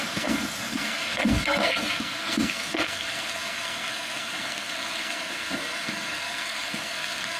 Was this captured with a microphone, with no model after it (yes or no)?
no